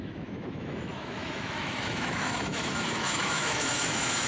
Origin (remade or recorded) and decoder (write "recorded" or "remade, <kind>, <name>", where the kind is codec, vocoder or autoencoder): remade, autoencoder, DAC-VAE